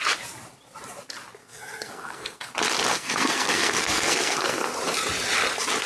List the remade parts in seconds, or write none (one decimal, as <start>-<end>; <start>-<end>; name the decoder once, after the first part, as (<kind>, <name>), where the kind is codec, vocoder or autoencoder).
1.4-2.5 (codec, SNAC); 2.9-4.7